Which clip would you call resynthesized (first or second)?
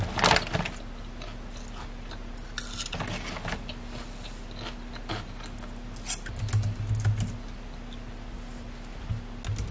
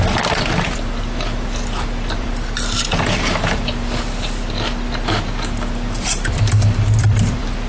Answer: second